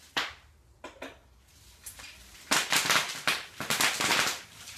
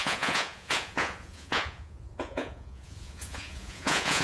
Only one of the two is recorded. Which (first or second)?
first